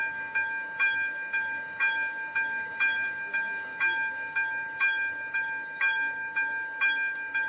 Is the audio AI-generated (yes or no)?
yes